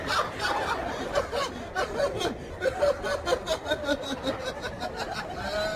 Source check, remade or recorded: recorded